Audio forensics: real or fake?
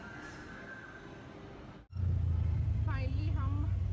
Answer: real